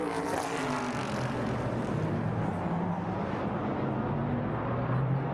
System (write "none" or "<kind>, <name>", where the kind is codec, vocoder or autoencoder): none